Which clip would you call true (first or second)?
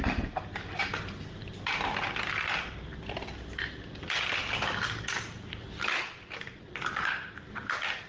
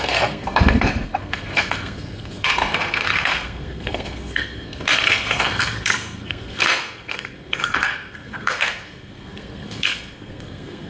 first